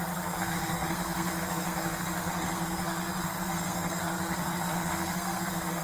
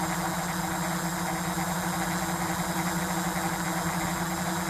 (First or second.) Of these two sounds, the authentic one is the second